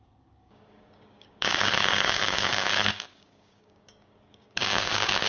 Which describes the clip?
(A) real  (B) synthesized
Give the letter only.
B